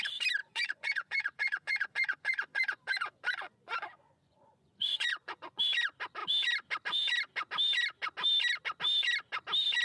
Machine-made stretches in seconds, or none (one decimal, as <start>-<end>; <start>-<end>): 0.4-5.6